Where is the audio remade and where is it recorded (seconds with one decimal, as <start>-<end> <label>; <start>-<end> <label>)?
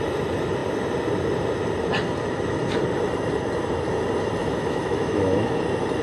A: 0.0-4.4 recorded; 4.4-5.6 remade; 5.6-6.0 recorded